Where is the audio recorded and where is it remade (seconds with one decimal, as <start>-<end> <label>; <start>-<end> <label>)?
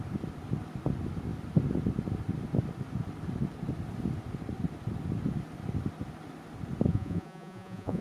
0.0-6.9 recorded; 6.9-8.0 remade